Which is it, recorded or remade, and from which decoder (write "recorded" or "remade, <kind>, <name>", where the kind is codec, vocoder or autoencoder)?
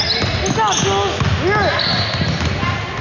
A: recorded